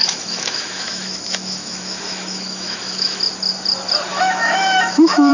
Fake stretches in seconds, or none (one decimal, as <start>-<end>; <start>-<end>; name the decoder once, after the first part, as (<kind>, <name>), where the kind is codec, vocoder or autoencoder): 0.0-3.2 (autoencoder, DAC-VAE); 4.1-5.3